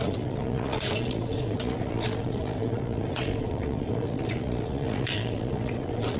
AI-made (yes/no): yes